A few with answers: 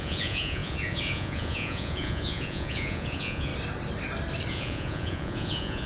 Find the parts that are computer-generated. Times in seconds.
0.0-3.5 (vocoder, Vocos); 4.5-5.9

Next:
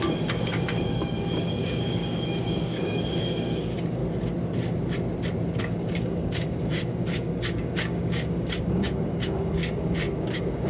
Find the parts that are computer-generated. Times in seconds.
0.0-4.0 (codec, DAC); 5.6-10.7

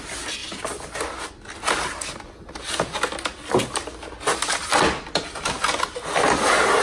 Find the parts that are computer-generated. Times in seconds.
none

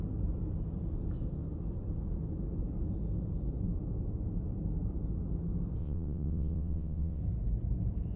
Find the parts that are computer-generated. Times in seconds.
5.8-7.2 (vocoder, WaveNeXt)

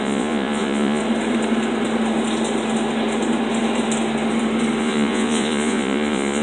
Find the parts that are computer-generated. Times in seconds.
0.0-1.0 (vocoder, Vocos); 4.8-6.4

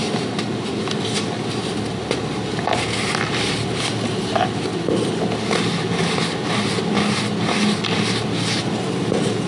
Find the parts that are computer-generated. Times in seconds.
none